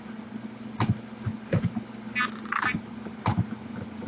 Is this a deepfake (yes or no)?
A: no